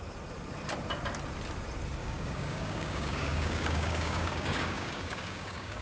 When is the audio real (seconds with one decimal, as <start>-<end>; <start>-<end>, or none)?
0.0-2.0